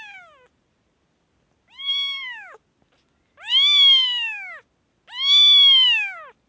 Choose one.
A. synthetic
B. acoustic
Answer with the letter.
B